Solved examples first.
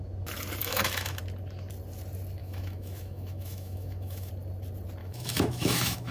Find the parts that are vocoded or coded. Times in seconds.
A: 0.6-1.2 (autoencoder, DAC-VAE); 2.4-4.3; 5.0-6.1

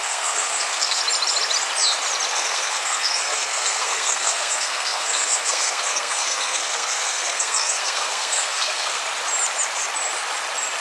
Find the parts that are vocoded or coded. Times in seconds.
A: 0.0-1.0 (codec, SNAC); 2.3-9.0

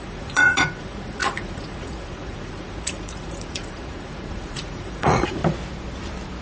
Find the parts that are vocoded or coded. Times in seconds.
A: 0.0-5.4 (vocoder, Vocos)

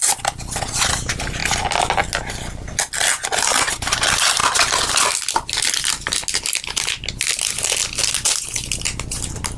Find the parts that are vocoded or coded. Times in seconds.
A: none

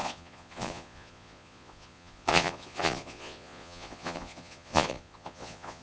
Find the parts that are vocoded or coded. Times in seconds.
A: 0.0-5.8 (vocoder, Vocos)

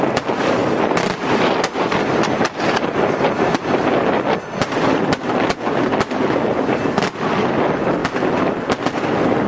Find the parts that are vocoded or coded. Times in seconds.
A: none